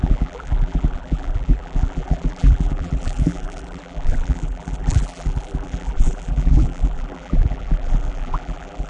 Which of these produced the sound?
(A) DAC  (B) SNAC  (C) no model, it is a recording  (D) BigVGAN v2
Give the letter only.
D